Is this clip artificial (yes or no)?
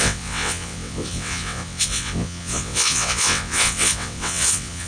yes